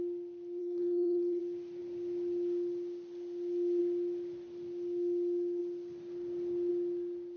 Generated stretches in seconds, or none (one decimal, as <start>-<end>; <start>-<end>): 0.6-1.4